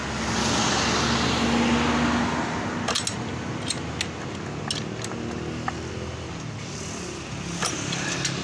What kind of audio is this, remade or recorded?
recorded